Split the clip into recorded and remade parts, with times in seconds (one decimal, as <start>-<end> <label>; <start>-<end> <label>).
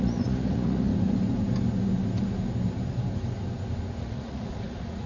0.0-0.9 remade; 0.9-4.0 recorded; 4.0-5.1 remade